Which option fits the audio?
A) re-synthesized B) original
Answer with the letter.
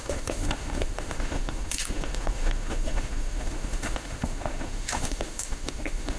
A